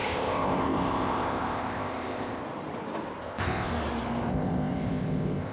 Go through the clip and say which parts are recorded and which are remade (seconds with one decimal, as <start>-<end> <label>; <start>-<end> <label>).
0.0-2.4 remade; 2.4-3.2 recorded; 3.2-3.7 remade; 3.7-4.3 recorded; 4.3-5.5 remade

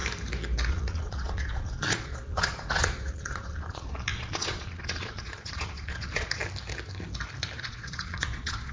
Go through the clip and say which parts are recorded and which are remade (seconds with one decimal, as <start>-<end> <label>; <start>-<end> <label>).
0.0-0.7 recorded; 0.7-6.4 remade; 6.4-7.6 recorded; 7.6-8.7 remade

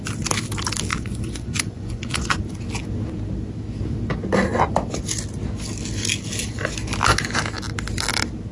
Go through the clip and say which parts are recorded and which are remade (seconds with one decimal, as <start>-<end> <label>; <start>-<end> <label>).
0.0-0.9 recorded; 0.9-2.4 remade; 2.4-8.5 recorded

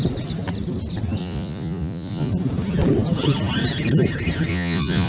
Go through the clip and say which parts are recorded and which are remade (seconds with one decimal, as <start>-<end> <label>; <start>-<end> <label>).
0.0-1.2 recorded; 1.2-2.3 remade; 2.3-4.5 recorded; 4.5-5.1 remade